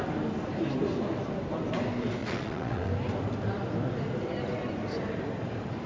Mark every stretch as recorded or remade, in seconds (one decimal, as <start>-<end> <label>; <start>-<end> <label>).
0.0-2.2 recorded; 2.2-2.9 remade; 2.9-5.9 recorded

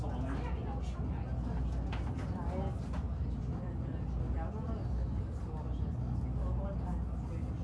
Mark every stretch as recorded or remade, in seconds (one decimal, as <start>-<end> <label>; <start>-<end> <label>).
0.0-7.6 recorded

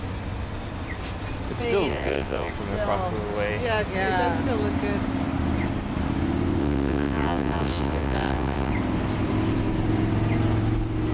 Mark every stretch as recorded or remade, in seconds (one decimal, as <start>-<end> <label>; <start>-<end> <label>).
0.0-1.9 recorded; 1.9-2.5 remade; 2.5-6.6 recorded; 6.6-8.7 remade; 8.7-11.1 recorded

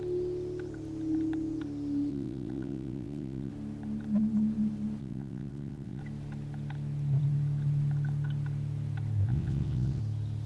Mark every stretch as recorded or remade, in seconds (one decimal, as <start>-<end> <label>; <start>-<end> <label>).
0.0-2.1 recorded; 2.1-3.5 remade; 3.5-5.0 recorded; 5.0-6.0 remade; 6.0-9.3 recorded; 9.3-10.0 remade; 10.0-10.5 recorded

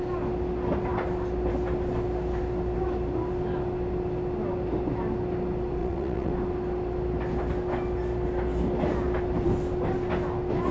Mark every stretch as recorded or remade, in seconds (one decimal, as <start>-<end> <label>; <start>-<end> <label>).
0.0-5.8 recorded; 5.8-6.3 remade; 6.3-10.7 recorded